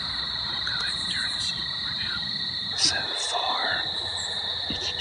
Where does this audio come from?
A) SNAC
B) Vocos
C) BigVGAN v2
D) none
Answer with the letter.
D